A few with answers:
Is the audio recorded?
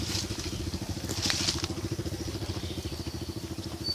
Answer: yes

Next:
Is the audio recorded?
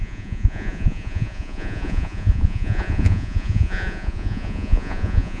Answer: no